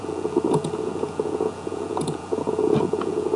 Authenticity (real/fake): fake